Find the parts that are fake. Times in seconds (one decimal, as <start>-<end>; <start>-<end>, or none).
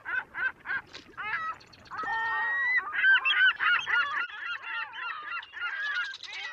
none